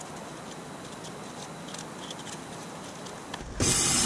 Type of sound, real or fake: real